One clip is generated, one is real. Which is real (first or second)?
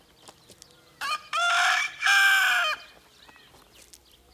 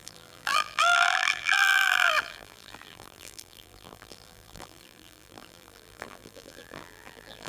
first